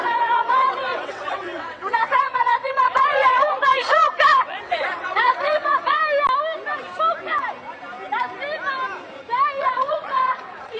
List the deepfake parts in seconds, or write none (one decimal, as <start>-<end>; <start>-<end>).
0.0-6.0; 9.6-10.8